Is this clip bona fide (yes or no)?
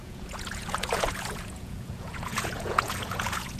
no